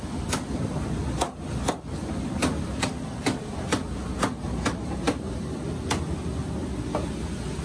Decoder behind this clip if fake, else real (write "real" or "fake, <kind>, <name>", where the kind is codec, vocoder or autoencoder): real